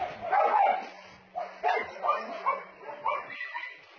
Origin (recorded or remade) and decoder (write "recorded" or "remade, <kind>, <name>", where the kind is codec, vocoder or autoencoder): recorded